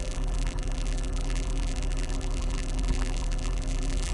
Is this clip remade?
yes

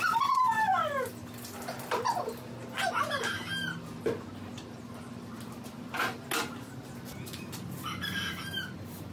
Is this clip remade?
no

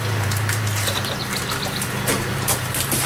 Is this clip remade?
yes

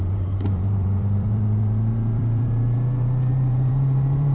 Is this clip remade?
yes